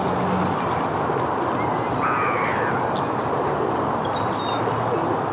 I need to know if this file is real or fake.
real